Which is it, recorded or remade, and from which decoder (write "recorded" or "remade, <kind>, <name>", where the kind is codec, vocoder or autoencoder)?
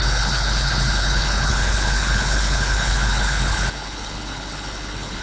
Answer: remade, codec, HILCodec